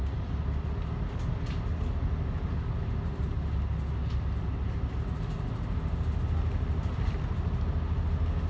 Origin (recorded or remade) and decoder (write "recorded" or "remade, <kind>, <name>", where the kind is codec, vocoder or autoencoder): recorded